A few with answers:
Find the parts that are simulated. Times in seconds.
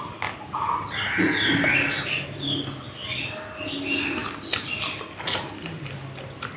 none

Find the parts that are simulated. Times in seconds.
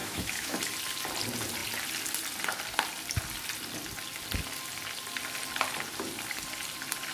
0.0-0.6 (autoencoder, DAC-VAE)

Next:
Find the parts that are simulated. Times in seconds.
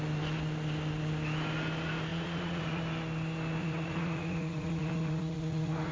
2.1-2.8 (vocoder, Vocos); 3.6-5.9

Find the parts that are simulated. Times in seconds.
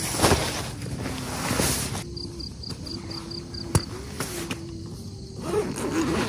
none